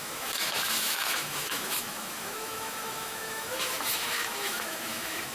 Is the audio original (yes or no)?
no